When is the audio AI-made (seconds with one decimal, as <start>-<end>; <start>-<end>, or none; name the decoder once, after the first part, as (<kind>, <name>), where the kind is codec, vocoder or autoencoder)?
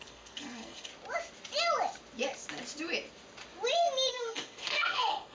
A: 0.0-0.9 (codec, SNAC); 4.1-5.3